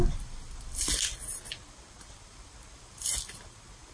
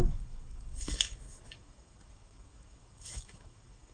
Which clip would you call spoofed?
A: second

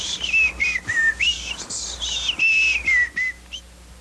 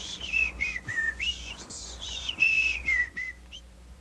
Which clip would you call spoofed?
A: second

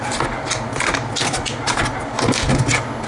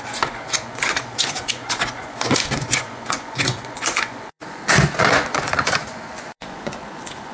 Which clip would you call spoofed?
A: second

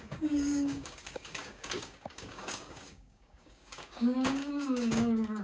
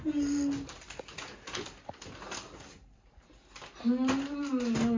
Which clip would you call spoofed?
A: first